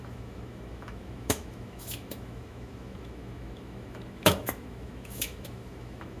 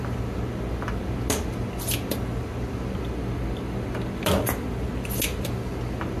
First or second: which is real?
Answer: second